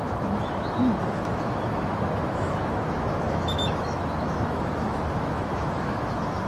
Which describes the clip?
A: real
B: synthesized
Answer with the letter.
B